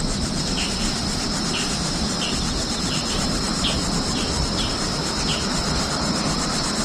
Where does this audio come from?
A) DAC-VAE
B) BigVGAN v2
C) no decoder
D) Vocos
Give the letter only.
C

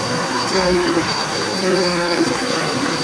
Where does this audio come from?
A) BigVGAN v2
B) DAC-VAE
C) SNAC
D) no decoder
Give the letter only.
C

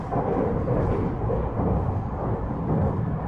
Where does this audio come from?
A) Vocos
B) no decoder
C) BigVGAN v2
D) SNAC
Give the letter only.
B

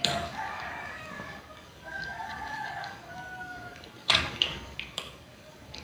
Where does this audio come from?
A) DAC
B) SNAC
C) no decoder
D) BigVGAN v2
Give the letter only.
A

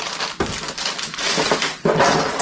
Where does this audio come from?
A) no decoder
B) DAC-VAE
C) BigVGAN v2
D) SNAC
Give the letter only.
A